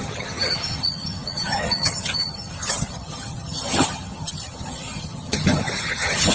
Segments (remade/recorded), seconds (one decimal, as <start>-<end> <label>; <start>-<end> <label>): 0.0-6.3 remade